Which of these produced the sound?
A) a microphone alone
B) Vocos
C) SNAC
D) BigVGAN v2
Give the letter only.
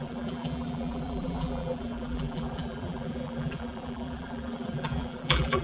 D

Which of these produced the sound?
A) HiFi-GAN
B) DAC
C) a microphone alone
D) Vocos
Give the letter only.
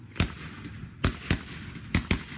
C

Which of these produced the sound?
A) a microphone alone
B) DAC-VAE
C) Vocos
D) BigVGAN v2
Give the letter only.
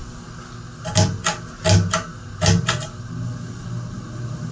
A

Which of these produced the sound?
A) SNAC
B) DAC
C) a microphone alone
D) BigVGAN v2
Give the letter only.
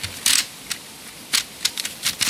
C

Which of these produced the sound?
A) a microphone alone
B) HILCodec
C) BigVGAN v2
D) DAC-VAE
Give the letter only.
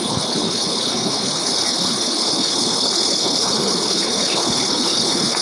B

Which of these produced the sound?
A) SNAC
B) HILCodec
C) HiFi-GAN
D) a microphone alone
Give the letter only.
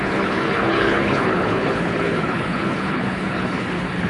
B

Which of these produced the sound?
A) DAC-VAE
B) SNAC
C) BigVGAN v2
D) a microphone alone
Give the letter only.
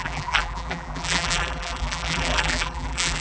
C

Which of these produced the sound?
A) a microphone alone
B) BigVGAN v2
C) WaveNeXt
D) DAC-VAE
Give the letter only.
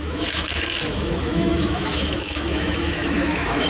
D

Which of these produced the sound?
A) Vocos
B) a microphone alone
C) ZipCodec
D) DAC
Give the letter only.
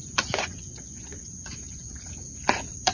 A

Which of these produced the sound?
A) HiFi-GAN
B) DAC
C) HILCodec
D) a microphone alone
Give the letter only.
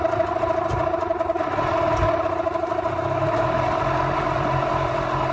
D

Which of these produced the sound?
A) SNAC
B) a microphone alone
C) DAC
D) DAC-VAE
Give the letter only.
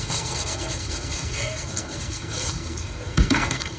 A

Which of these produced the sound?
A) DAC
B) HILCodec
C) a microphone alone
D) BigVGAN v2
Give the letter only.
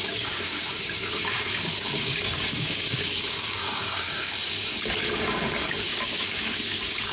A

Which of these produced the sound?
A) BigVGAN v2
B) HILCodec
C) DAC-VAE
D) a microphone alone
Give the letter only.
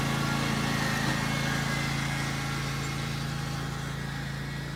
D